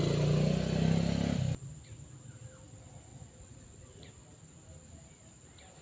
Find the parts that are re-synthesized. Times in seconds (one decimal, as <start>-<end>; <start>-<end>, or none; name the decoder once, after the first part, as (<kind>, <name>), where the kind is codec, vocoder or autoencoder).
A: 3.1-4.1 (vocoder, Vocos)

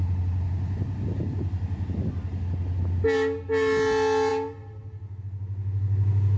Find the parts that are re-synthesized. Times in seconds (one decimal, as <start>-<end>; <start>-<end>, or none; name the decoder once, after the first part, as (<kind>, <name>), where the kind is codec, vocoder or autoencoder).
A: none